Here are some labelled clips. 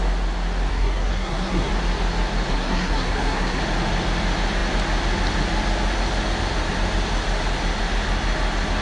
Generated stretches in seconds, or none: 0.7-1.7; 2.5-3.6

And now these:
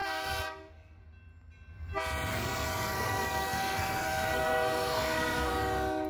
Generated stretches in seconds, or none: 0.0-1.0; 2.3-5.5

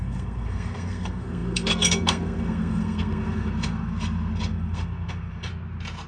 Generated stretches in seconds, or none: 0.0-5.5

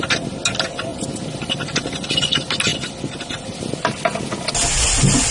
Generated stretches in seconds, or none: none

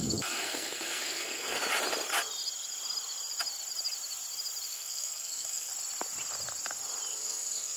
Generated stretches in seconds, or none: 0.0-1.6; 4.7-5.7; 7.1-7.8